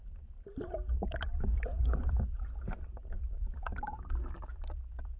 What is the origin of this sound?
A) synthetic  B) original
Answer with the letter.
A